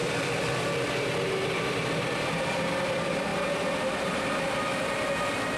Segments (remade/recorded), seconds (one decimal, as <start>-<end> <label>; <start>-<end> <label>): 0.0-0.5 remade; 0.5-5.6 recorded